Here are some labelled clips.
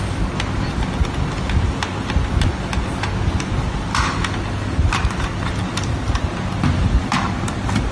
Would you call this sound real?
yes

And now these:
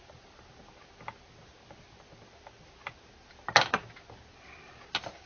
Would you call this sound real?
yes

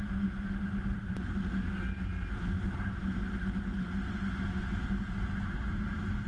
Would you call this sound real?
yes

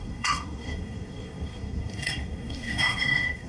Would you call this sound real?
no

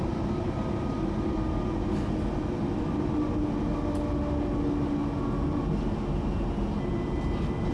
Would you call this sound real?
yes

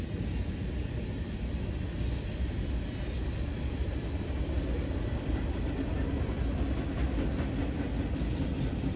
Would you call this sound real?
yes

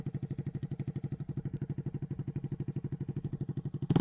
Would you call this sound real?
yes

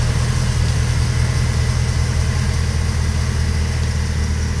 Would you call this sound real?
yes